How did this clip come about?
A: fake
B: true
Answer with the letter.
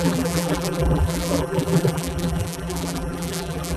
A